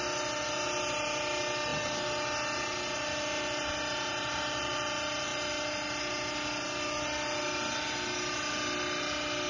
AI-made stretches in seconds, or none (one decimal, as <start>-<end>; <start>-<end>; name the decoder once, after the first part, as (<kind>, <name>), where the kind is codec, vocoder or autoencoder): none